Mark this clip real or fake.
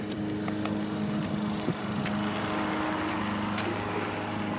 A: real